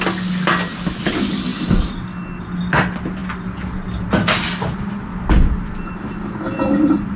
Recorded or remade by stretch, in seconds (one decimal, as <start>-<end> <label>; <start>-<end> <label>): 0.0-7.2 recorded